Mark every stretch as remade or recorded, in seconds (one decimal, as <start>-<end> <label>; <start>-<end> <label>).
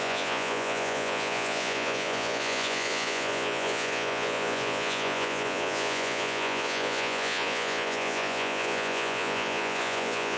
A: 0.0-10.4 remade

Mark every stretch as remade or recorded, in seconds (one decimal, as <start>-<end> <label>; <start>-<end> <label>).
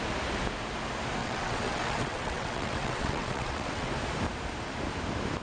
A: 0.0-1.2 recorded; 1.2-3.9 remade; 3.9-5.4 recorded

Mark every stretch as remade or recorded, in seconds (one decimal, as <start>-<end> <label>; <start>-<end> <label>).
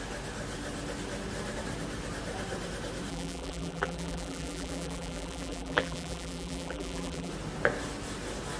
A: 0.0-3.1 recorded; 3.1-7.3 remade; 7.3-8.6 recorded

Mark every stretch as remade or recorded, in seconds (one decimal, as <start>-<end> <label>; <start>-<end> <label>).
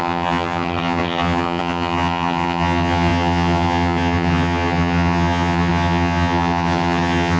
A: 0.0-7.4 remade